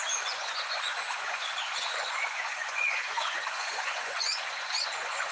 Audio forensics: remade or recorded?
remade